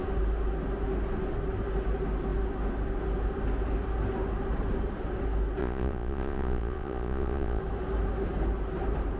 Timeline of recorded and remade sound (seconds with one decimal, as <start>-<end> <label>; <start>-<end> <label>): 0.0-5.6 recorded; 5.6-7.6 remade; 7.6-9.2 recorded